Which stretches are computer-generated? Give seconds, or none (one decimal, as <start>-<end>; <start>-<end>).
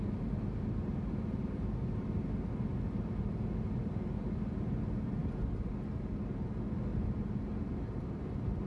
5.2-5.7; 6.9-8.7